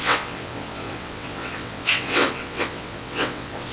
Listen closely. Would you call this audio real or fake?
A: fake